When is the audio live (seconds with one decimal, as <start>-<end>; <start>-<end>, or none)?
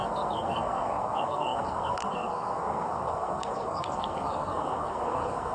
none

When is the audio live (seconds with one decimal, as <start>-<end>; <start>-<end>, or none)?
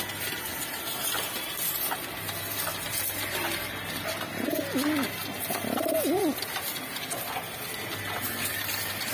0.0-0.5; 2.3-9.1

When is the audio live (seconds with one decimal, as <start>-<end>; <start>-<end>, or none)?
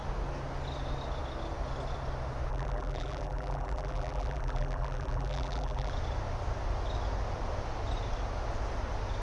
0.0-2.5; 5.9-9.2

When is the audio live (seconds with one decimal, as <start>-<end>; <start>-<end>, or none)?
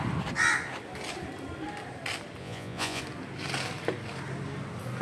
0.0-2.4; 3.0-5.0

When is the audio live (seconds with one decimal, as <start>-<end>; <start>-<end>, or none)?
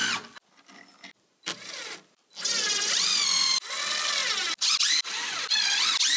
0.0-6.2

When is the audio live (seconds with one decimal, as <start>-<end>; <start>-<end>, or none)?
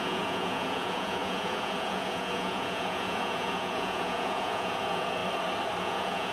5.2-5.8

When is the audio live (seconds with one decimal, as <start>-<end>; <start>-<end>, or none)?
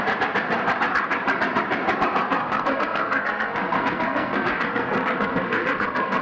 0.0-2.4